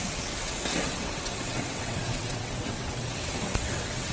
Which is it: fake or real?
fake